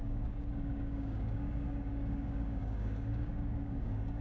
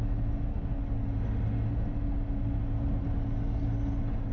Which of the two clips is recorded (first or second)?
second